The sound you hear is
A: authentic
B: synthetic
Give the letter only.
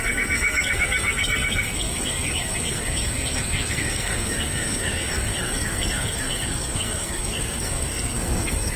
B